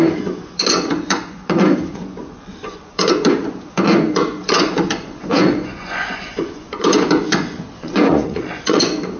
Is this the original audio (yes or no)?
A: no